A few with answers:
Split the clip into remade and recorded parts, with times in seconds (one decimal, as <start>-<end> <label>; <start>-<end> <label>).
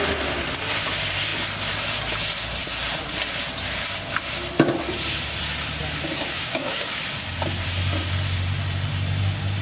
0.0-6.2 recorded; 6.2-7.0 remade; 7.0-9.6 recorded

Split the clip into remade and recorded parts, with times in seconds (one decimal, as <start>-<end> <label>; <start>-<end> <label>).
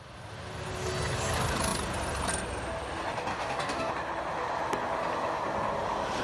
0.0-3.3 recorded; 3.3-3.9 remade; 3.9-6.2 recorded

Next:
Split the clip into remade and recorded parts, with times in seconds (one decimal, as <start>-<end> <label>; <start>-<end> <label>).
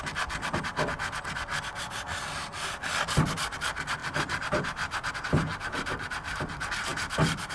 0.0-7.5 recorded